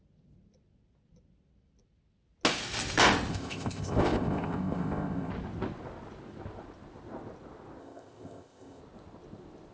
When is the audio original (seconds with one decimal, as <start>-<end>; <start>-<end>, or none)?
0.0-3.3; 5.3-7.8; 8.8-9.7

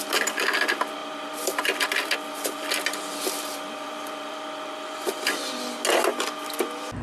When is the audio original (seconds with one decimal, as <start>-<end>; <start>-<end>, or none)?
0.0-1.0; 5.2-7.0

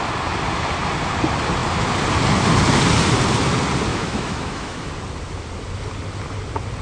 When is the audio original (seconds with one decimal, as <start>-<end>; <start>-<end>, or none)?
0.0-3.9; 4.9-6.8

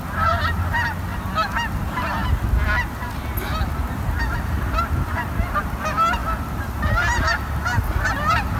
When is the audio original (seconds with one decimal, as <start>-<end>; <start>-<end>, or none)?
0.0-8.6

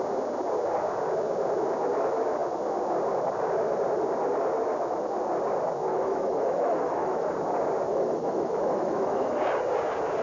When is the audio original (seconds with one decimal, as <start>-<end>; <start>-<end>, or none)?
0.0-5.9; 7.3-7.9; 9.4-10.2

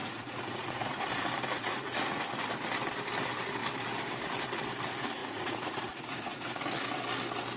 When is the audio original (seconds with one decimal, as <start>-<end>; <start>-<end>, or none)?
1.0-1.5; 2.2-5.2; 6.6-7.6

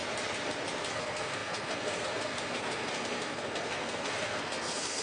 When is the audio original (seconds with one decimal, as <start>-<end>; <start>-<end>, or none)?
0.0-0.9

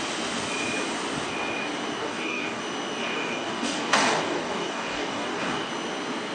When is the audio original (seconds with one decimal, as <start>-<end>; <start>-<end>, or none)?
0.0-2.0; 2.6-3.0; 5.7-6.3